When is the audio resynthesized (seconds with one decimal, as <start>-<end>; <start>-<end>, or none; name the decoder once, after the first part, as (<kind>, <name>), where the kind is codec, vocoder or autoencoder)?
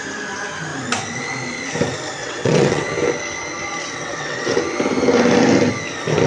2.2-2.9 (vocoder, WaveNeXt); 3.8-4.6